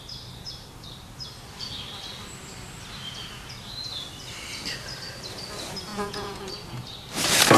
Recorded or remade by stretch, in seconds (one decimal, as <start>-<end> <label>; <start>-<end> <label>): 0.0-5.9 recorded; 5.9-6.5 remade; 6.5-7.6 recorded